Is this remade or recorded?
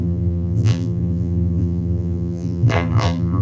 remade